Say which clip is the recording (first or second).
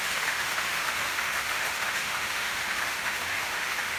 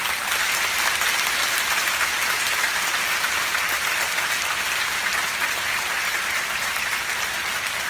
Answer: second